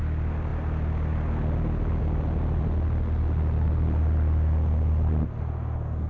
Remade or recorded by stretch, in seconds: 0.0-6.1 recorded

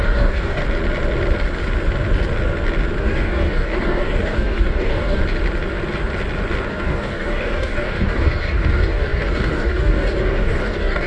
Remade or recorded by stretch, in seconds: 0.0-0.6 remade; 0.6-3.0 recorded; 3.0-5.2 remade; 5.2-6.7 recorded; 6.7-11.1 remade

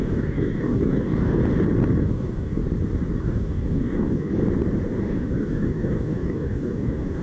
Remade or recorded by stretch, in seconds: 0.0-1.4 remade; 1.4-2.0 recorded; 2.0-2.6 remade; 2.6-3.2 recorded; 3.2-4.4 remade; 4.4-5.0 recorded; 5.0-7.2 remade

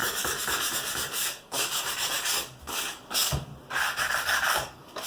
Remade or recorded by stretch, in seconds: 0.0-3.5 remade; 3.5-4.0 recorded; 4.0-5.1 remade

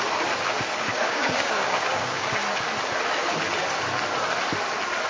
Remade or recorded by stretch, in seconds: 0.0-0.9 recorded; 0.9-2.3 remade; 2.3-5.1 recorded

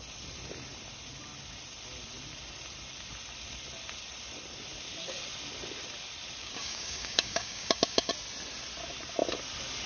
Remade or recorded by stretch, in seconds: 0.0-6.4 recorded; 6.4-8.1 remade; 8.1-9.9 recorded

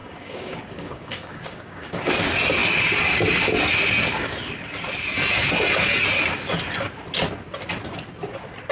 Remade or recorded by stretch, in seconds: 0.0-2.1 remade; 2.1-8.7 recorded